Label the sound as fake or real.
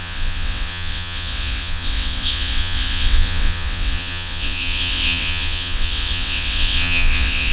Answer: fake